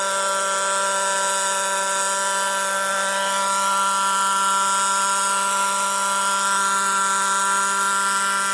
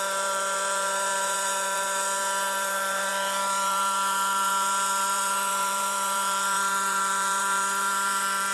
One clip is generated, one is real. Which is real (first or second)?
first